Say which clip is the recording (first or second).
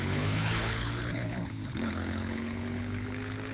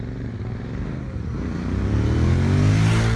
second